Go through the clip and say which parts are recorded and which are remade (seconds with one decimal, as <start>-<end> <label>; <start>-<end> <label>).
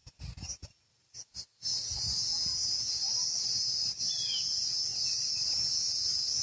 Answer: 0.0-6.4 recorded